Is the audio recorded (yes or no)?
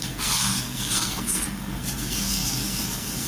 no